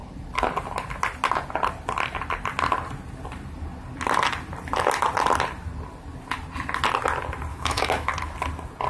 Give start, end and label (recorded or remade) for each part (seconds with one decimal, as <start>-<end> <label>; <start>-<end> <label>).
0.0-7.5 recorded; 7.5-8.1 remade; 8.1-8.9 recorded